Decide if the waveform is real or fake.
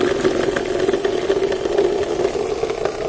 real